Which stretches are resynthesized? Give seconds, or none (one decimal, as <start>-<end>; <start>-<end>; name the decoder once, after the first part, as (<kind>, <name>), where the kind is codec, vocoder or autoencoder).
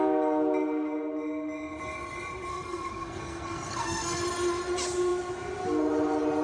2.5-4.2 (codec, SNAC)